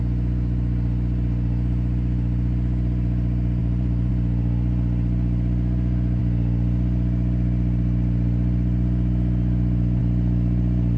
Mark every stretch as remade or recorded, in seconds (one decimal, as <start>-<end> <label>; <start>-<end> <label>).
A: 0.0-3.6 recorded; 3.6-4.1 remade; 4.1-11.0 recorded